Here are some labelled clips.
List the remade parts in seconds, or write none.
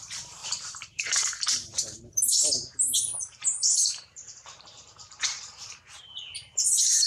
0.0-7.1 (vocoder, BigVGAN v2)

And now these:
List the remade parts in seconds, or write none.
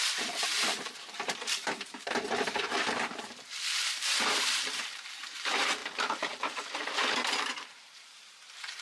0.0-8.8 (vocoder, BigVGAN v2)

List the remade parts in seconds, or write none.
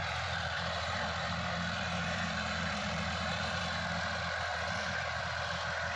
0.0-3.6 (vocoder, BigVGAN v2); 4.5-5.2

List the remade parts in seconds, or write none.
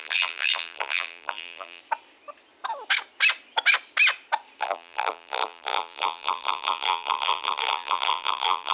0.0-1.8 (vocoder, BigVGAN v2); 4.6-8.7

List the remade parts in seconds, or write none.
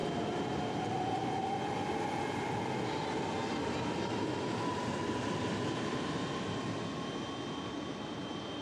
none